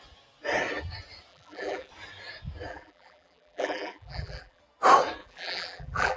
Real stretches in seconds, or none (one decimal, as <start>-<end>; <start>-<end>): 0.0-1.3; 1.9-2.7; 4.6-5.2